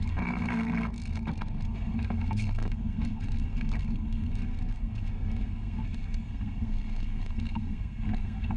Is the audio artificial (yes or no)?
yes